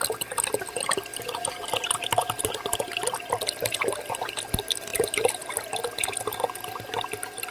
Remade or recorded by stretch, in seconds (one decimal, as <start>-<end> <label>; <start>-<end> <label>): 0.0-1.1 recorded; 1.1-2.5 remade; 2.5-4.9 recorded; 4.9-5.6 remade; 5.6-7.5 recorded